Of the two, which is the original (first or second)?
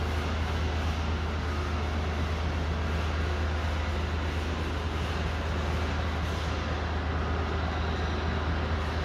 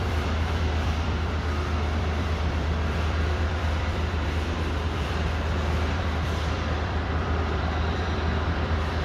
first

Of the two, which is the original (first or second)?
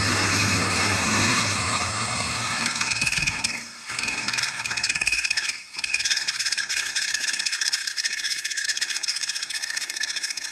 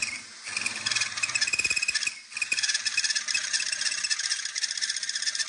second